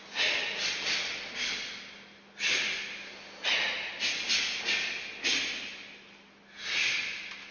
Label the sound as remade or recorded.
recorded